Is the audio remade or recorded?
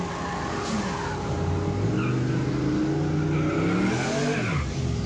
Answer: recorded